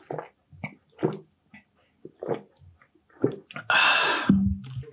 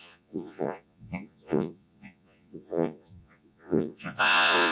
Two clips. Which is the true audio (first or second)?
first